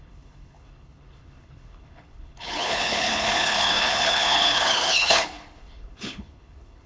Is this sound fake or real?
fake